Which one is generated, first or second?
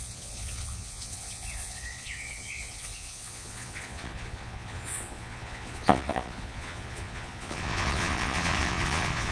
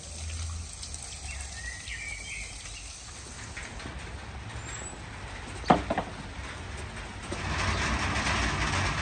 first